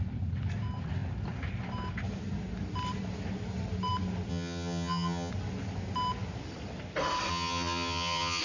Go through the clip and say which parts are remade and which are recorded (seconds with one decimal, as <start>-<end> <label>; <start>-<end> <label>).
0.0-4.3 recorded; 4.3-5.3 remade; 5.3-7.3 recorded; 7.3-8.4 remade